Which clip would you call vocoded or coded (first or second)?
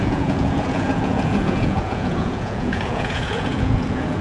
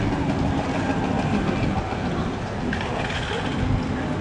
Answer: first